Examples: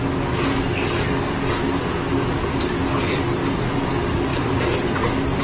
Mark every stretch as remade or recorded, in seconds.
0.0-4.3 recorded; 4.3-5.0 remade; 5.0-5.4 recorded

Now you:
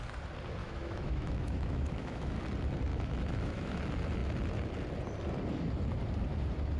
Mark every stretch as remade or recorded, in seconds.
0.0-0.6 recorded; 0.6-2.4 remade; 2.4-2.9 recorded; 2.9-3.8 remade; 3.8-6.8 recorded

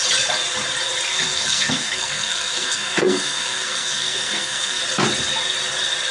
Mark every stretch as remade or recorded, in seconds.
0.0-1.1 recorded; 1.1-4.8 remade; 4.8-6.1 recorded

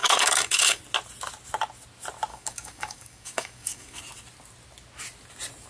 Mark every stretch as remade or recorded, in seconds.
0.0-0.8 remade; 0.8-2.3 recorded; 2.3-4.0 remade; 4.0-5.7 recorded